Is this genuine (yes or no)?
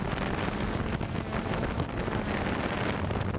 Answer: yes